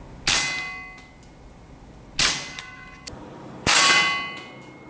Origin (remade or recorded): recorded